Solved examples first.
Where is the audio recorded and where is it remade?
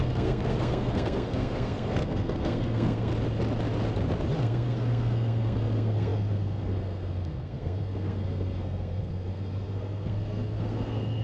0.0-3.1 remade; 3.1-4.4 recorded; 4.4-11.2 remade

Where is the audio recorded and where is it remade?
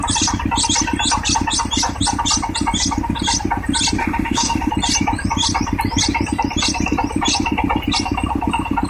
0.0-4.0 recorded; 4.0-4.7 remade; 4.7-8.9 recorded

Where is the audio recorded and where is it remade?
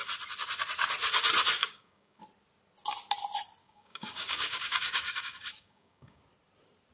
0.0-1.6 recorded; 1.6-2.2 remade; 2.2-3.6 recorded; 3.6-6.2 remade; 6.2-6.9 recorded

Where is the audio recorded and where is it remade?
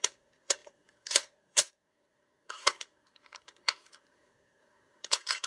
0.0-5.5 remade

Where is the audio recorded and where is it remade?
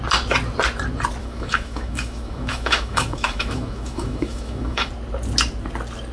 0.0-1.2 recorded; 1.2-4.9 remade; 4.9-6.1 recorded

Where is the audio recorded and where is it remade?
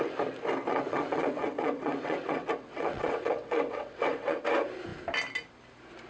0.0-0.7 recorded; 0.7-4.4 remade; 4.4-6.1 recorded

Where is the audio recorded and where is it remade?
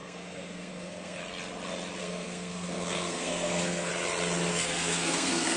0.0-1.2 remade; 1.2-2.0 recorded; 2.0-3.9 remade; 3.9-4.5 recorded; 4.5-5.6 remade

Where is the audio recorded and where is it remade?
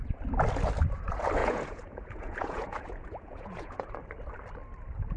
0.0-1.4 recorded; 1.4-3.9 remade; 3.9-5.2 recorded